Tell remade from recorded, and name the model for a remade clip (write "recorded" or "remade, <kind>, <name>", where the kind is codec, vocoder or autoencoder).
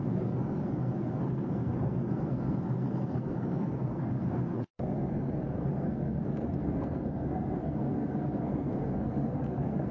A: remade, codec, SNAC